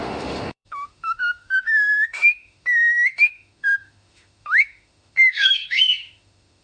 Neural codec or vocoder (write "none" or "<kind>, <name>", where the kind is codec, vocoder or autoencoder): autoencoder, DAC-VAE